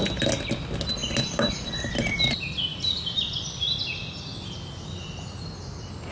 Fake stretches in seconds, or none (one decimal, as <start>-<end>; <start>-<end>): none